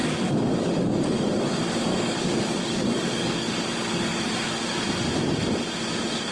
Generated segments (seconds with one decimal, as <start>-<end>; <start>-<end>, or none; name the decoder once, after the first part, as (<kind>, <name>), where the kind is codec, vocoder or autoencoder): 0.0-1.4 (codec, DAC); 1.9-4.2